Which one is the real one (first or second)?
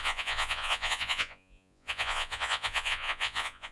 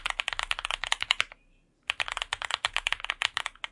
second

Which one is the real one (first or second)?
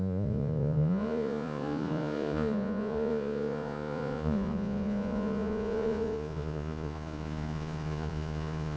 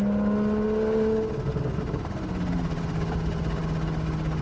second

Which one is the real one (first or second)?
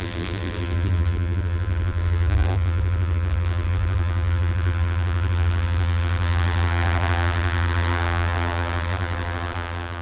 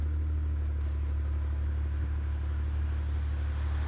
second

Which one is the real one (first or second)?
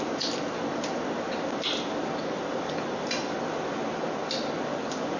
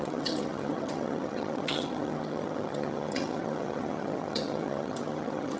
first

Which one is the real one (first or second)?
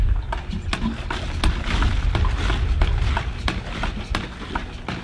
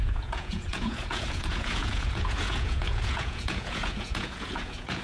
first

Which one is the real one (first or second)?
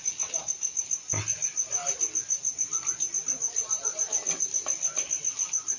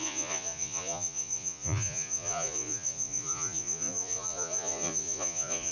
first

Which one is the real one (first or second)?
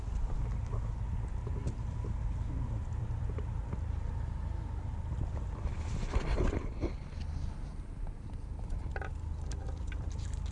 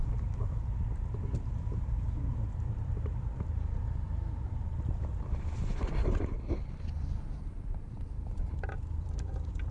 first